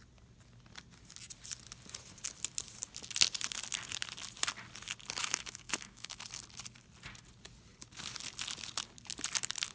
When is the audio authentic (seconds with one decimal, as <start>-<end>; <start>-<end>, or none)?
0.0-5.2; 6.2-9.7